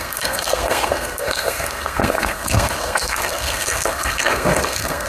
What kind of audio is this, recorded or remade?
remade